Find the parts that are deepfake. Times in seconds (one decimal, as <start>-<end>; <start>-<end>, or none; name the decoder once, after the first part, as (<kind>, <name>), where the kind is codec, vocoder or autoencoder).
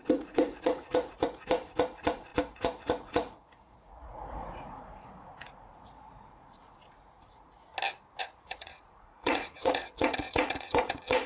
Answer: 0.0-7.7 (vocoder, Vocos); 8.2-11.3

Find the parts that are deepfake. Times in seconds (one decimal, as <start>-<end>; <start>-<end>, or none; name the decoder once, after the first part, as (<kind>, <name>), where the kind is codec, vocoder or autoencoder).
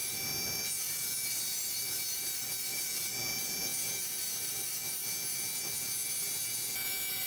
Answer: 0.0-0.6 (vocoder, BigVGAN v2)